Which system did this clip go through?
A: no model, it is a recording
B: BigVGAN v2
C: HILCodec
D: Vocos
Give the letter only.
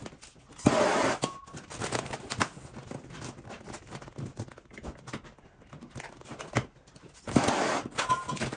A